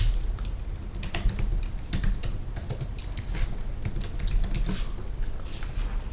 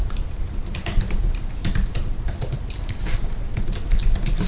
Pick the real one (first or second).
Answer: first